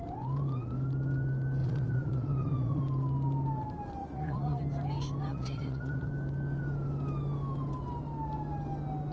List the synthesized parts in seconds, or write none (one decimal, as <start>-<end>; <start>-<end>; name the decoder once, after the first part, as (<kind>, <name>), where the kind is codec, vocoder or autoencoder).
1.6-2.8 (vocoder, Vocos); 4.0-4.6; 5.3-6.1